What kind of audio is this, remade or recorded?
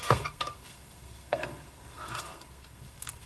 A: remade